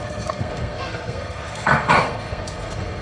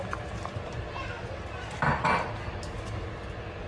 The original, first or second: second